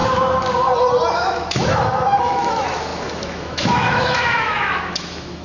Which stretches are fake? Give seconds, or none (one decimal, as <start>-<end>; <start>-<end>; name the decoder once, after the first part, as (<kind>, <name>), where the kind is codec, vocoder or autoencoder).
1.1-5.4 (autoencoder, DAC-VAE)